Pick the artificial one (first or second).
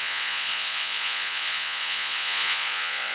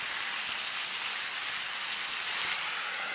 first